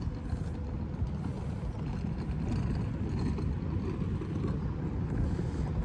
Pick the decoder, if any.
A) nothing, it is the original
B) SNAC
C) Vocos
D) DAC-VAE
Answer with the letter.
A